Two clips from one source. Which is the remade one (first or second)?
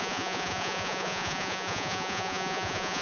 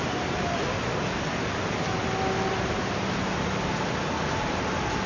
first